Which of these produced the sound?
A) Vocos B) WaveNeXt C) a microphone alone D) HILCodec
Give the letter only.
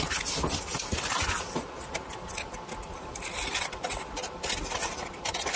C